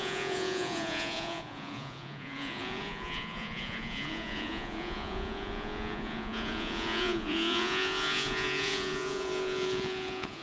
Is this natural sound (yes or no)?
no